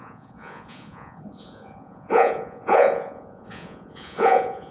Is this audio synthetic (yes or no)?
yes